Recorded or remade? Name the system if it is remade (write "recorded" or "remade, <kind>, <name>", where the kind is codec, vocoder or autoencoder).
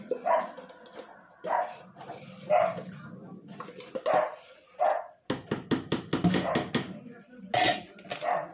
recorded